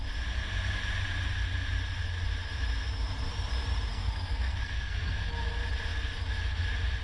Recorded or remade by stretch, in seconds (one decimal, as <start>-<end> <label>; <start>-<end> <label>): 0.0-3.9 recorded; 3.9-5.3 remade; 5.3-7.0 recorded